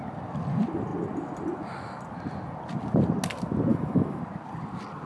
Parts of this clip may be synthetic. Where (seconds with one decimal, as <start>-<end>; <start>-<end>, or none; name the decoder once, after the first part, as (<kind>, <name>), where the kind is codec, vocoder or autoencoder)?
3.7-4.2 (autoencoder, DAC-VAE)

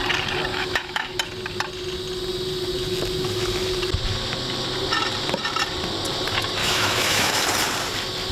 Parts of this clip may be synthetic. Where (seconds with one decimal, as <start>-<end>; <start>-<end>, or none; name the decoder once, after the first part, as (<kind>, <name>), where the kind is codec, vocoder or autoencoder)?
0.5-1.1 (autoencoder, DAC-VAE); 6.6-7.3

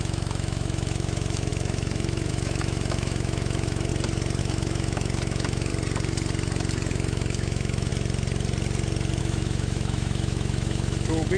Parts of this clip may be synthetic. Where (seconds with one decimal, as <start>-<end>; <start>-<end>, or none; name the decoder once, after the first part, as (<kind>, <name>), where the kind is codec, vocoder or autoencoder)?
0.0-3.9 (autoencoder, DAC-VAE); 4.4-5.7; 6.9-7.9; 9.2-11.4

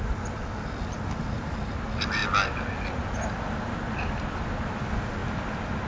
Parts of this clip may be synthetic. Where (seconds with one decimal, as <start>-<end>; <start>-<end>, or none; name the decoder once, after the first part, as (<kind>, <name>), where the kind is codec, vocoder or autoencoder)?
none

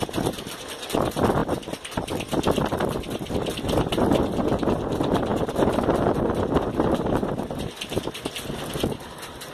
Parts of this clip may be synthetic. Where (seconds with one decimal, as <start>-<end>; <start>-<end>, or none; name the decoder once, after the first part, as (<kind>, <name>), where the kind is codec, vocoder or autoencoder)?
none

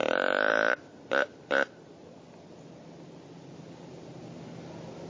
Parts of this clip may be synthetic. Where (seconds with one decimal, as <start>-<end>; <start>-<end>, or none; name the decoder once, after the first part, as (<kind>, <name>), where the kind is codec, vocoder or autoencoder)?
none